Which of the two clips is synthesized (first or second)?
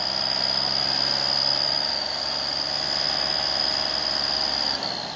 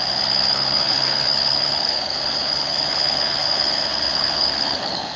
second